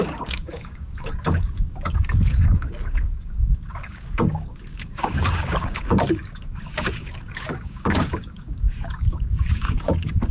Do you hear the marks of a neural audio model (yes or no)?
yes